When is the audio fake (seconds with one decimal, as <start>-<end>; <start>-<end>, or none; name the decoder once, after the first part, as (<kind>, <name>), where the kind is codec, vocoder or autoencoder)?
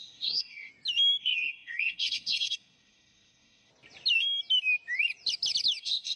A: 0.0-0.7 (codec, SNAC); 1.2-3.7; 5.8-6.2